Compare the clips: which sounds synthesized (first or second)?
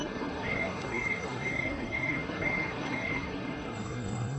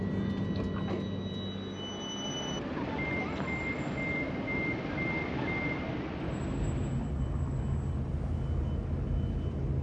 first